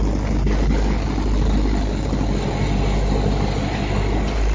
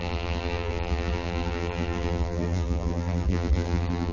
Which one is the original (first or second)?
first